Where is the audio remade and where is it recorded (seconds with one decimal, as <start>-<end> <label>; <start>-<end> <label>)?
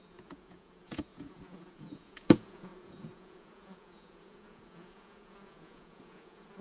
0.0-6.6 remade